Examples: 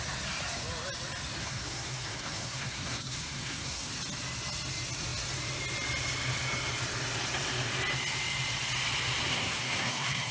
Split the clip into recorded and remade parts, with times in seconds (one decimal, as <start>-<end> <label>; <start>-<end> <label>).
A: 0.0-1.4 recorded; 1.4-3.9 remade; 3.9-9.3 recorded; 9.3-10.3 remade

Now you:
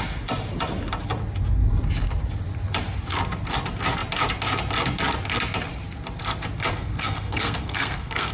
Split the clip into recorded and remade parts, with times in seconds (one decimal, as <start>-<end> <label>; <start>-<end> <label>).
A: 0.0-6.7 recorded; 6.7-8.3 remade

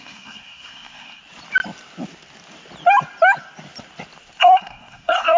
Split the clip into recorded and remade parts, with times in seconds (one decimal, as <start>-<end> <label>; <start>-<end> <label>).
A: 0.0-1.2 remade; 1.2-4.4 recorded; 4.4-5.4 remade